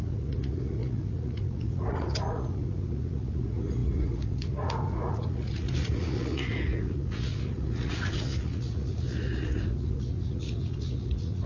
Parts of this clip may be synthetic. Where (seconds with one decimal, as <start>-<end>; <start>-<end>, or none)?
0.0-11.5